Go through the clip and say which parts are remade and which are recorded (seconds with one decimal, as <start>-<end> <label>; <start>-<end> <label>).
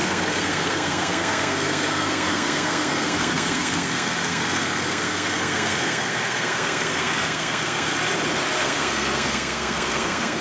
0.0-7.9 remade; 7.9-8.6 recorded; 8.6-10.4 remade